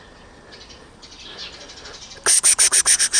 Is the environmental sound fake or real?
real